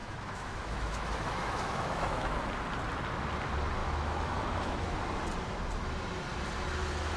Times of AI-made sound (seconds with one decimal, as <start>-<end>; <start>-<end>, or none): 0.0-2.3; 3.8-5.0